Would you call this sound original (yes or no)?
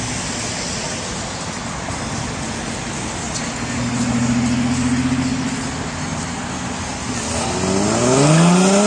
yes